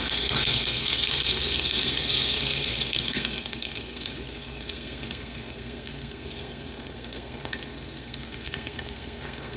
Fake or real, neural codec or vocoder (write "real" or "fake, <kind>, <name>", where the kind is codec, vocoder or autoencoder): fake, codec, SNAC